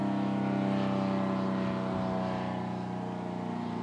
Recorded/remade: recorded